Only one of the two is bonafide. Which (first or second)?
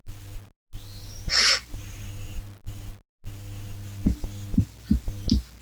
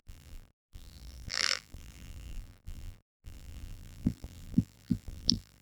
first